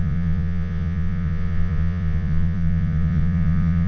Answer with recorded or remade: remade